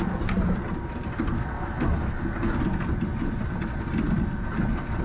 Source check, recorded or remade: recorded